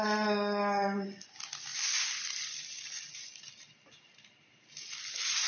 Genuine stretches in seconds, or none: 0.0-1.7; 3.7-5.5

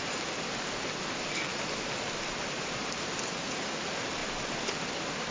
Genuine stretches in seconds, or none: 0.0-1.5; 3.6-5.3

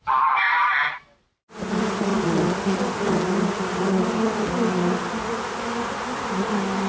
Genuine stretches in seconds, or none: 0.6-1.2; 2.1-5.6

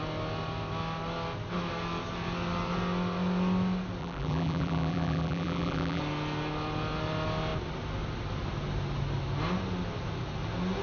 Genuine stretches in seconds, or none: 0.0-4.0; 6.0-10.8